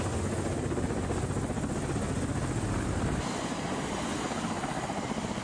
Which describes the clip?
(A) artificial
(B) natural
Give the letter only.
B